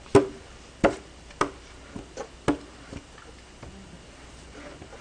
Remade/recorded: recorded